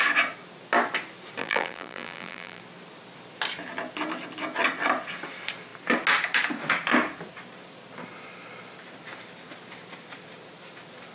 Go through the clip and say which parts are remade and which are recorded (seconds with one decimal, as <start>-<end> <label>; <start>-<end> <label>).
0.0-1.4 recorded; 1.4-2.6 remade; 2.6-11.1 recorded